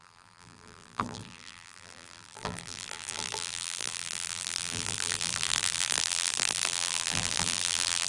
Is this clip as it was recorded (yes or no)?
no